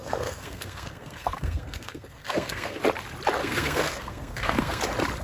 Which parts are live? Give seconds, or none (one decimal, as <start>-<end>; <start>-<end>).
2.8-3.4; 4.8-5.2